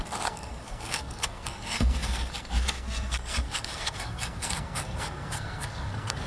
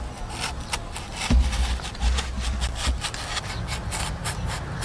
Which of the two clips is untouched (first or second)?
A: second